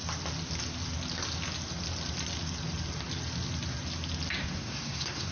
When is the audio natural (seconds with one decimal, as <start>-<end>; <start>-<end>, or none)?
0.0-4.4

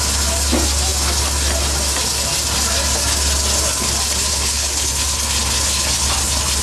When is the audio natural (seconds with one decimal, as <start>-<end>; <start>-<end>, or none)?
0.0-4.3; 4.9-6.6

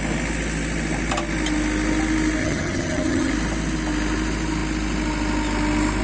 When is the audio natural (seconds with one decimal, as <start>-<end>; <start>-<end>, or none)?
0.0-2.4; 3.3-6.0